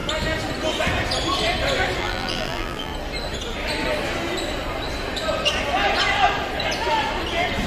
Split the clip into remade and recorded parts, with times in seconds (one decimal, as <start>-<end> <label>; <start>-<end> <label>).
0.0-2.0 recorded; 2.0-2.9 remade; 2.9-7.7 recorded